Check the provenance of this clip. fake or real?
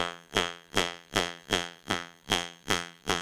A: fake